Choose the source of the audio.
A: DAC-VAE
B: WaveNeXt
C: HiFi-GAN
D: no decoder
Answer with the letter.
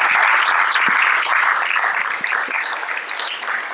D